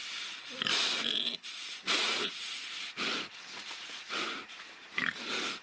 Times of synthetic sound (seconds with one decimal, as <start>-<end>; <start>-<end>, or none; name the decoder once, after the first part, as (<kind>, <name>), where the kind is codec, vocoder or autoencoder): 1.6-5.0 (vocoder, Vocos)